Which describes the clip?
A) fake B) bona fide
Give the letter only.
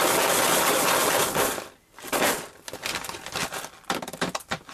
B